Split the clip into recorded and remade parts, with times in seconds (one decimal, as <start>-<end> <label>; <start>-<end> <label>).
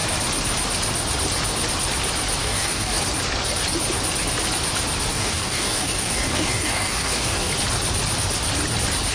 0.0-2.4 recorded; 2.4-3.0 remade; 3.0-5.1 recorded; 5.1-7.5 remade; 7.5-9.1 recorded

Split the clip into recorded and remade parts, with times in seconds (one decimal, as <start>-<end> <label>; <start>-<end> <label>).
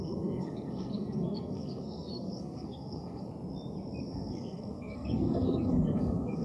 0.0-3.3 remade; 3.3-4.0 recorded; 4.0-6.4 remade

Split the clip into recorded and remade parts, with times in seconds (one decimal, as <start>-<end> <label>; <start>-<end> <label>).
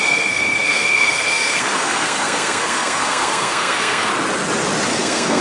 0.0-4.1 remade; 4.1-4.9 recorded; 4.9-5.4 remade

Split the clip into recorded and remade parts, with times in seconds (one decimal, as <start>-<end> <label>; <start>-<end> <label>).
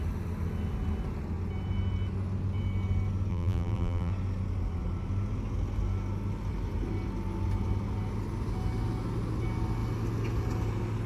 0.0-3.3 recorded; 3.3-4.1 remade; 4.1-11.1 recorded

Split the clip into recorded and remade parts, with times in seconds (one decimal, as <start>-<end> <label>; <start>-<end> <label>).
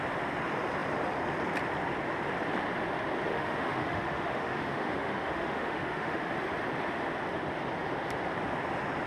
0.0-3.3 recorded; 3.3-6.3 remade; 6.3-9.1 recorded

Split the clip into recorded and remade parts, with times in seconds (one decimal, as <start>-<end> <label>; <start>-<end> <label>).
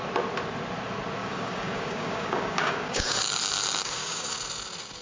0.0-1.2 recorded; 1.2-3.2 remade; 3.2-3.8 recorded; 3.8-4.3 remade; 4.3-5.0 recorded